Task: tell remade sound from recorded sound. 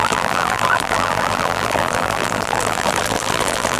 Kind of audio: remade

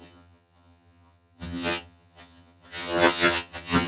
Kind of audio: remade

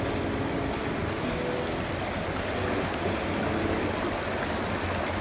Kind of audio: recorded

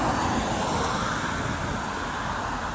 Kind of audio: recorded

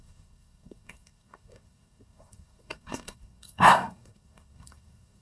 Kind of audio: remade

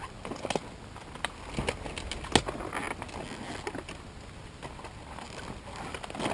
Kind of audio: recorded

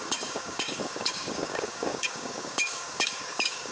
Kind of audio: remade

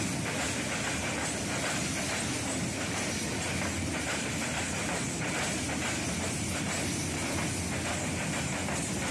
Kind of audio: recorded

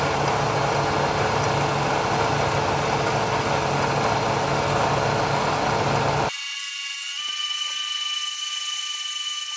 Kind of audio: recorded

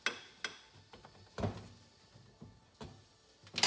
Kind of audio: recorded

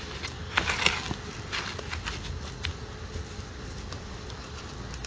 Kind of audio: recorded